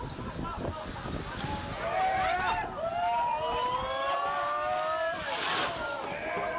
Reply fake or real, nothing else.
real